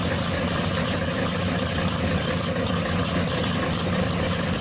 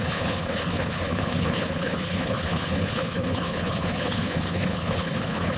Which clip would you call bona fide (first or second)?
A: first